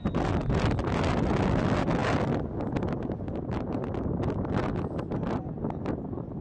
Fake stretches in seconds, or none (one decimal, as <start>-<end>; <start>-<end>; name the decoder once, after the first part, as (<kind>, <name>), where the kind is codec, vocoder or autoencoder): none